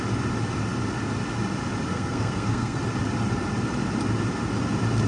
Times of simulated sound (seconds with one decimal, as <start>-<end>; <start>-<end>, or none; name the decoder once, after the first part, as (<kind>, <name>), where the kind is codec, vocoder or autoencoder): 1.9-2.8 (codec, SNAC)

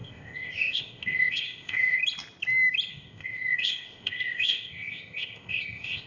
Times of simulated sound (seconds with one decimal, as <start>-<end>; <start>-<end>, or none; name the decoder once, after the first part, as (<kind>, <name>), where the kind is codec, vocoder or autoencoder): 0.0-2.0 (codec, ZipCodec); 2.9-6.1